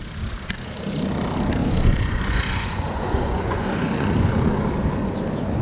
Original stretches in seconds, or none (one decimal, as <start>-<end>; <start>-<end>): 0.0-1.6; 4.6-5.6